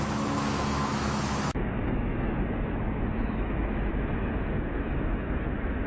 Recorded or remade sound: remade